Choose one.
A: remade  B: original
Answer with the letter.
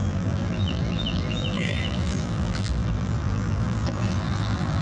A